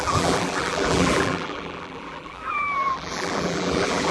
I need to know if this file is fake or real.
fake